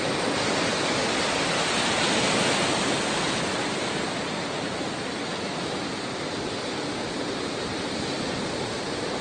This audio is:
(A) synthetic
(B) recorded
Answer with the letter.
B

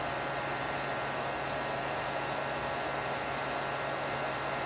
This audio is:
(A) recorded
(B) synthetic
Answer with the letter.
A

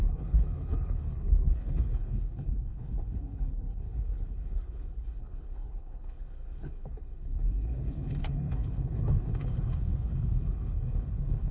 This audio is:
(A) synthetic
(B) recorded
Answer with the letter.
A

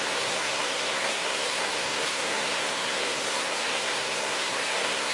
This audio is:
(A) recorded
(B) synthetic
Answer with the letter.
B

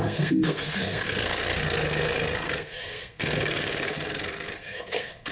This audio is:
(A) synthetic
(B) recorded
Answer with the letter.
A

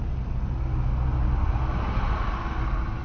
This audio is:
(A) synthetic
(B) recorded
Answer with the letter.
B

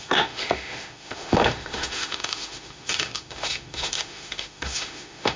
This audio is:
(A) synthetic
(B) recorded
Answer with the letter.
A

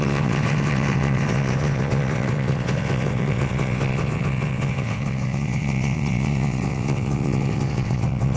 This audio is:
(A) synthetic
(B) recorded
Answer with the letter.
A